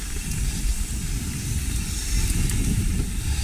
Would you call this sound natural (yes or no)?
yes